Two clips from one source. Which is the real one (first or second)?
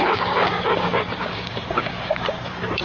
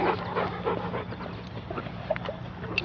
second